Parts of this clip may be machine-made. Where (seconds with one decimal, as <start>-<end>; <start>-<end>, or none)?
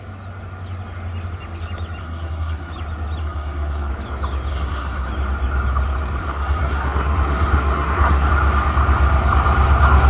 2.0-2.7; 3.2-3.9; 4.5-5.1; 6.2-8.3